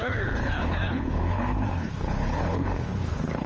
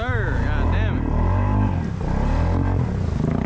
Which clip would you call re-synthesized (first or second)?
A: first